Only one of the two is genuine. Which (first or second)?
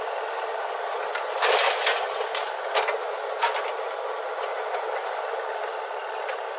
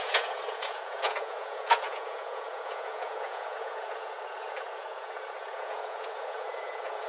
first